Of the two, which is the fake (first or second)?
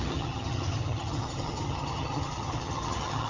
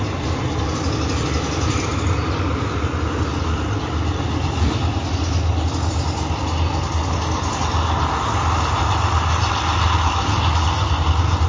first